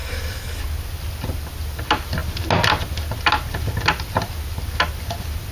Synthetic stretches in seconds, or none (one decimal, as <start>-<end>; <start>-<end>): 0.0-0.6